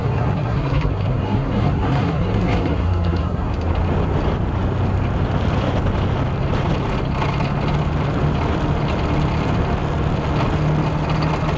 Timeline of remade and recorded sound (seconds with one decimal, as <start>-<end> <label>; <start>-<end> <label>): 0.0-3.5 remade; 3.5-11.6 recorded